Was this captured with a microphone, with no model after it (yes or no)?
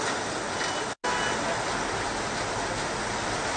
yes